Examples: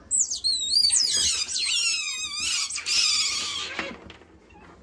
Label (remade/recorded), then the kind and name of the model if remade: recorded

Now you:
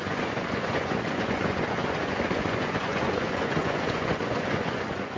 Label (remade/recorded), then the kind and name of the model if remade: remade, vocoder, Vocos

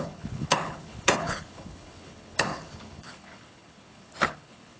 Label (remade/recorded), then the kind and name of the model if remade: remade, codec, HILCodec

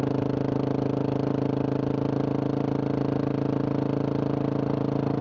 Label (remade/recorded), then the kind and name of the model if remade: recorded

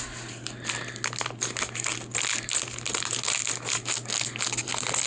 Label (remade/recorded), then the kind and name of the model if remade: recorded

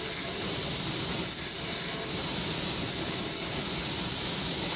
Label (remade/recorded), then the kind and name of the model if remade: recorded